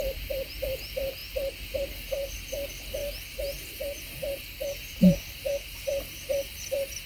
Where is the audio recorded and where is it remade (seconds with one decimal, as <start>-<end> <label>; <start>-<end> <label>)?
0.0-1.2 remade; 1.2-1.8 recorded; 1.8-3.0 remade; 3.0-4.6 recorded; 4.6-7.1 remade